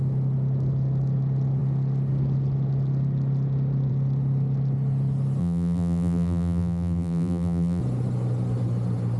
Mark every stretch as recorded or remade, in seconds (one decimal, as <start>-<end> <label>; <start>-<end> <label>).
0.0-5.4 recorded; 5.4-7.8 remade; 7.8-9.2 recorded